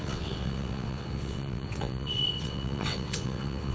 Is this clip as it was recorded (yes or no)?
no